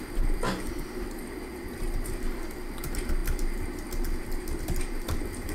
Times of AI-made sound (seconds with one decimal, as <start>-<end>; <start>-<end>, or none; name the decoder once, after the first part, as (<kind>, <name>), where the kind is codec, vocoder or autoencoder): none